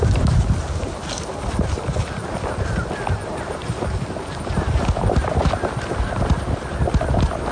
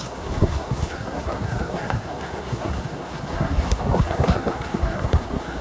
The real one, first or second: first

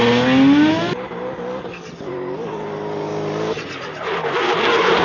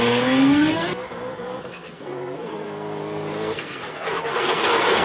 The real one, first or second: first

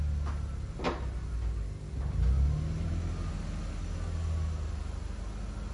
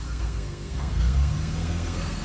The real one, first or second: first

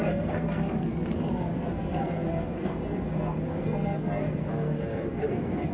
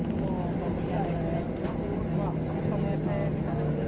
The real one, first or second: second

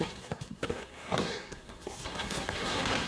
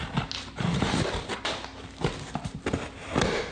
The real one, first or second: second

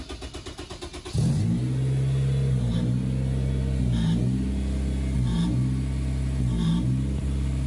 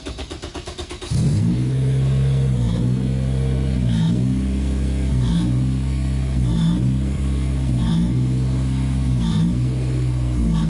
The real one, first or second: first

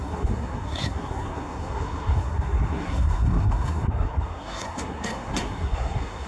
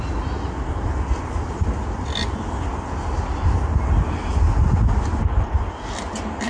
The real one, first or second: second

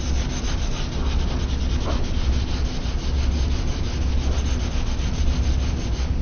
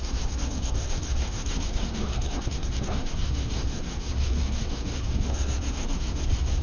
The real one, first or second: first